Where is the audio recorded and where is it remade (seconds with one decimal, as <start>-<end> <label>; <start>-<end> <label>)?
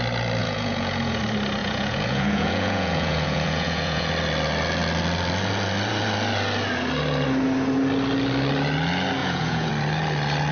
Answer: 0.0-0.4 recorded; 0.4-1.2 remade; 1.2-1.6 recorded; 1.6-4.1 remade; 4.1-9.2 recorded; 9.2-9.7 remade; 9.7-10.5 recorded